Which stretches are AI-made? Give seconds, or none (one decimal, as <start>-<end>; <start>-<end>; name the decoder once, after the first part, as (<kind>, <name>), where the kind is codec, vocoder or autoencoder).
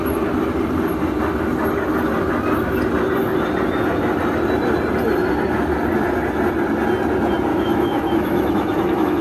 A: 7.5-9.2 (autoencoder, DAC-VAE)